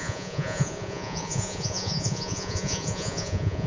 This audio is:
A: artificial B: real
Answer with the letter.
A